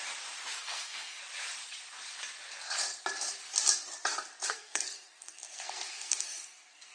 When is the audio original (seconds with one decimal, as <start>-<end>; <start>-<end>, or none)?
0.0-0.6; 1.2-4.5